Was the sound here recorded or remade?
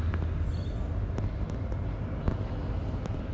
recorded